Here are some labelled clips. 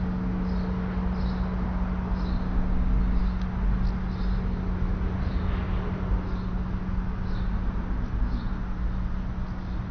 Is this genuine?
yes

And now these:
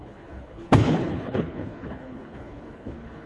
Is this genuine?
no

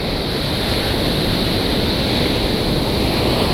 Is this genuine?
yes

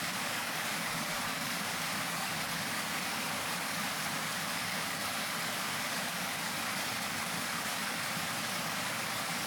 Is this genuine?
no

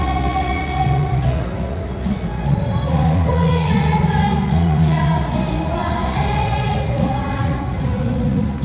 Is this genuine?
no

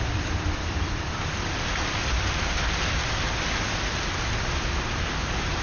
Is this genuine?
yes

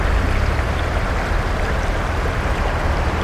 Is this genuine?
yes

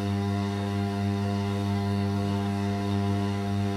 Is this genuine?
no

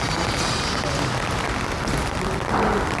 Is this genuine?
yes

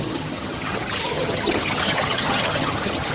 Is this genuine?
no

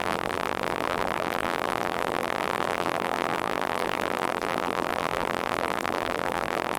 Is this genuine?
no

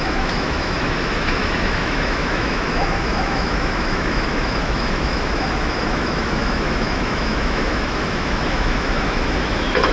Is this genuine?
no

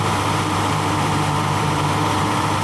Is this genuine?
no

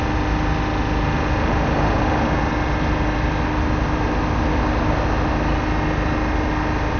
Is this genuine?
yes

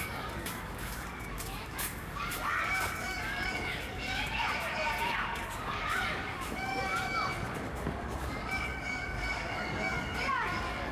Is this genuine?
no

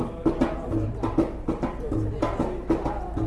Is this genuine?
yes